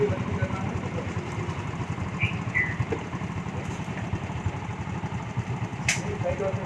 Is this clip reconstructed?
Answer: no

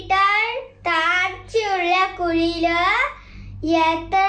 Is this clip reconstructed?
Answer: no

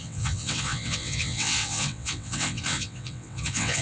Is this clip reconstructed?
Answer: yes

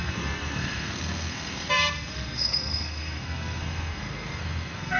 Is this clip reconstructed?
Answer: yes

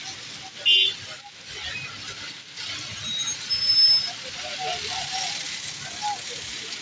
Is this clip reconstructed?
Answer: no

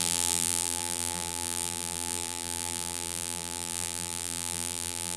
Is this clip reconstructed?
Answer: yes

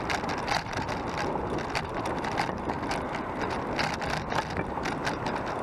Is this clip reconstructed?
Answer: no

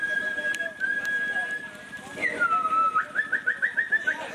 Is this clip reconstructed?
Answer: no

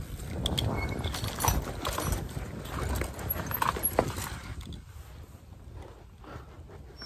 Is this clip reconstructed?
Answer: no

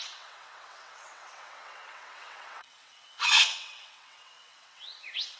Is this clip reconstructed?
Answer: yes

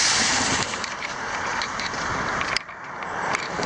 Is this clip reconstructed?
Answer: yes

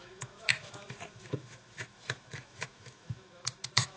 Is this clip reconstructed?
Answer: yes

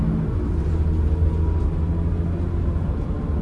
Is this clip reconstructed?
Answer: no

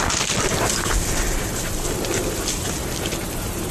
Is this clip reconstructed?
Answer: no